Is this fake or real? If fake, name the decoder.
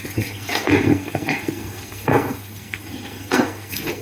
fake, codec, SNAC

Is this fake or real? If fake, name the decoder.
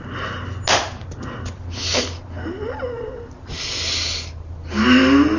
real